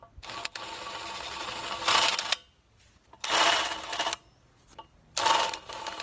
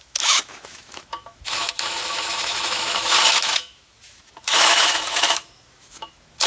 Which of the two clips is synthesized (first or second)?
second